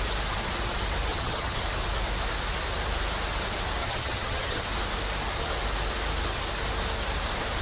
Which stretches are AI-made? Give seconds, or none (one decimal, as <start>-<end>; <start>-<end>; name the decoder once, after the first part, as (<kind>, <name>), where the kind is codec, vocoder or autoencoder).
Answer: 1.1-1.6 (vocoder, HiFi-GAN); 3.8-4.7